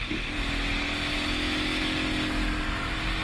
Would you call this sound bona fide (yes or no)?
yes